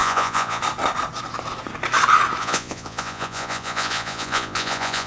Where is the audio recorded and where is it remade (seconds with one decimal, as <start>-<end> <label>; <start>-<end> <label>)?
0.0-0.6 remade; 0.6-2.4 recorded; 2.4-5.1 remade